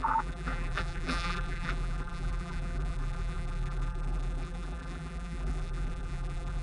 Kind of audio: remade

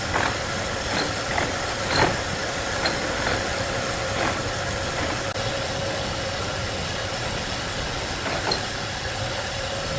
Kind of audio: recorded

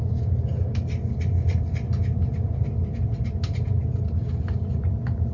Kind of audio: recorded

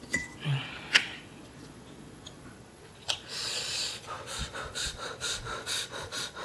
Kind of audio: remade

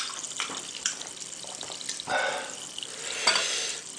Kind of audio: recorded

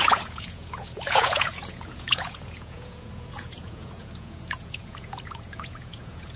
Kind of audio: remade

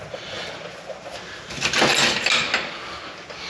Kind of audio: recorded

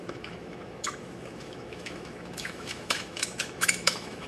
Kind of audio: remade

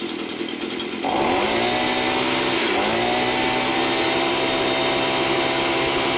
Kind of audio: recorded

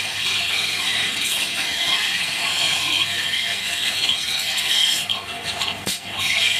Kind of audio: remade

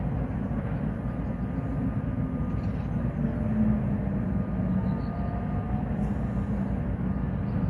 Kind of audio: recorded